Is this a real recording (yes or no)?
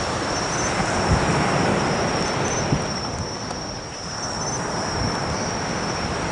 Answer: yes